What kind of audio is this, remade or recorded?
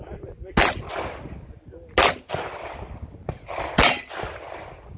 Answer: recorded